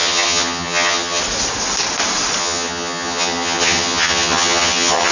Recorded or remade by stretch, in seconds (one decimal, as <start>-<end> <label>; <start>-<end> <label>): 0.0-1.2 remade; 1.2-2.4 recorded; 2.4-5.1 remade